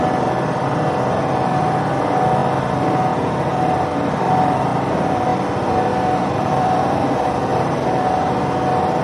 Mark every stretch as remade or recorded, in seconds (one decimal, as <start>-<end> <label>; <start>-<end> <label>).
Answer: 0.0-5.9 recorded; 5.9-6.8 remade; 6.8-7.5 recorded; 7.5-8.0 remade; 8.0-9.0 recorded